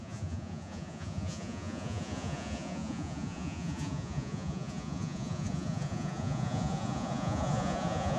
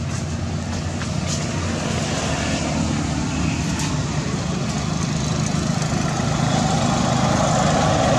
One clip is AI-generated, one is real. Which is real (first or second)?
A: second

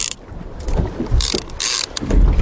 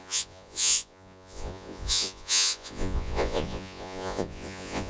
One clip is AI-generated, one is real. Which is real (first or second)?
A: first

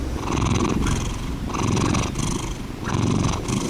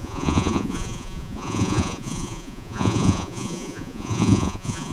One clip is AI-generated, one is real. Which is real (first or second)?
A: first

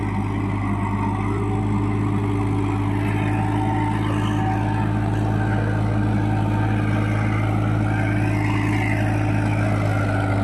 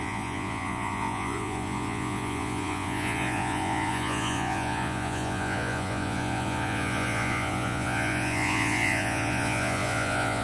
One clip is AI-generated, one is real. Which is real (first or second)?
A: first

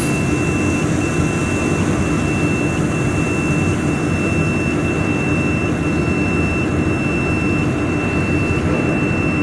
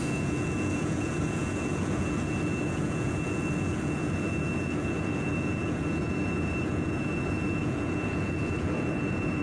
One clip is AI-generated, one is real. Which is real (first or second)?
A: first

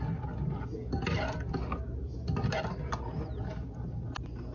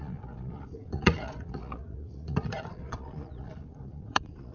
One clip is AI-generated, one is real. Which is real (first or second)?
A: first